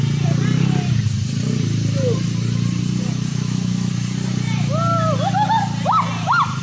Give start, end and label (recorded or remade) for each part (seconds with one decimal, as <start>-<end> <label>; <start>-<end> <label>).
0.0-3.3 recorded; 3.3-3.9 remade; 3.9-6.6 recorded